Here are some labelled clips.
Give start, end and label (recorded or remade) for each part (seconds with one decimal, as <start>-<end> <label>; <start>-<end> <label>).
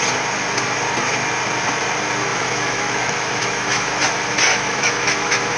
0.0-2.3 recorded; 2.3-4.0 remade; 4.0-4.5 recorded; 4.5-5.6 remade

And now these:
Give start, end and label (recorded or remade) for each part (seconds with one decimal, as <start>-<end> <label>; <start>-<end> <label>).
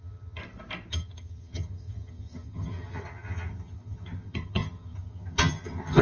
0.0-0.4 remade; 0.4-0.9 recorded; 0.9-6.0 remade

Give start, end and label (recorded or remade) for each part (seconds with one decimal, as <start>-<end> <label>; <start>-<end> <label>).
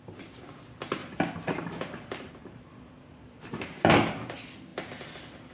0.0-1.0 recorded; 1.0-3.9 remade; 3.9-5.5 recorded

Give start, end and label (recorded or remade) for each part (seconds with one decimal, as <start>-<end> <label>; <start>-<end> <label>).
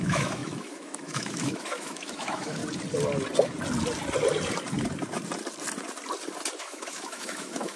0.0-2.6 remade; 2.6-6.6 recorded; 6.6-7.8 remade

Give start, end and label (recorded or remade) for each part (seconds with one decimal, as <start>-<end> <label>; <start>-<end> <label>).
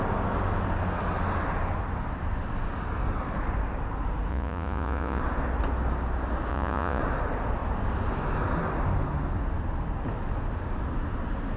0.0-4.3 recorded; 4.3-5.2 remade; 5.2-6.5 recorded; 6.5-7.0 remade; 7.0-11.6 recorded